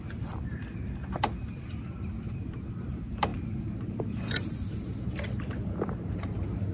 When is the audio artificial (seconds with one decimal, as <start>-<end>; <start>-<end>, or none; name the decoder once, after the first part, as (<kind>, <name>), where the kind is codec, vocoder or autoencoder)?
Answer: 3.3-4.5 (vocoder, BigVGAN v2)

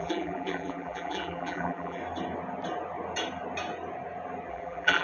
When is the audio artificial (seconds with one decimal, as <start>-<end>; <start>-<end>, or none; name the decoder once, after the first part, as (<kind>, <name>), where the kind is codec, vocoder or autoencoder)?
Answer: 0.0-2.0 (vocoder, BigVGAN v2); 4.5-5.0

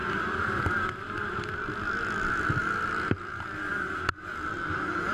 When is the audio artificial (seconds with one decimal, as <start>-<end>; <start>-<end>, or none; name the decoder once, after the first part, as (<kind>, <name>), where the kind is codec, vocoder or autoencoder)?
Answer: none

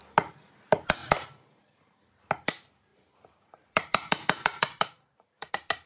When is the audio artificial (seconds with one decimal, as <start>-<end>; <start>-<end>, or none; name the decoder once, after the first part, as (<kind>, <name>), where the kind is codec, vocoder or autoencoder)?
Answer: 1.0-2.3 (vocoder, BigVGAN v2); 2.9-5.5

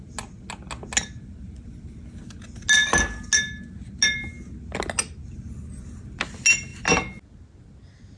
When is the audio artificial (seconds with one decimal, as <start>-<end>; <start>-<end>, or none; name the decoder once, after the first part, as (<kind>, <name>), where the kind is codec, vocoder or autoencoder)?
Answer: none

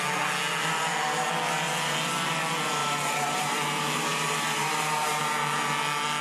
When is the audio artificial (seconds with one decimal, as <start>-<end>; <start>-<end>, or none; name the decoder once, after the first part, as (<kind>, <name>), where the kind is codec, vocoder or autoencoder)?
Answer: 2.8-5.2 (vocoder, BigVGAN v2)